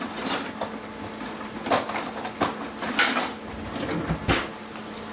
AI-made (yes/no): no